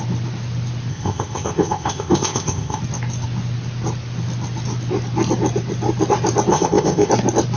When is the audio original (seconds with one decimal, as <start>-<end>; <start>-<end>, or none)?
0.0-0.9; 2.8-6.5; 7.1-7.6